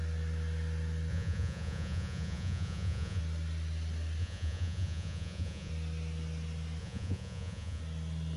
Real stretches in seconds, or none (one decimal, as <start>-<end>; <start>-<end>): 0.0-1.1; 3.2-4.2; 5.7-6.8; 7.8-8.4